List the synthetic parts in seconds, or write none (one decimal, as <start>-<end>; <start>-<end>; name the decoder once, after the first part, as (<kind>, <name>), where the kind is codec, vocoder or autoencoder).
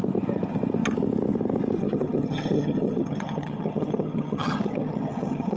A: 1.8-5.6 (vocoder, HiFi-GAN)